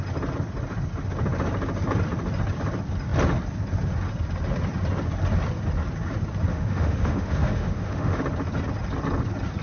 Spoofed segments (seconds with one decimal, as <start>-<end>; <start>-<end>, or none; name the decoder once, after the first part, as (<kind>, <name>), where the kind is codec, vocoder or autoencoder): 6.5-8.2 (autoencoder, DAC-VAE)